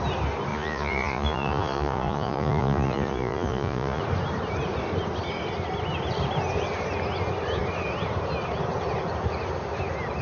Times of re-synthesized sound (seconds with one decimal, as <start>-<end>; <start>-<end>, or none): 0.5-4.0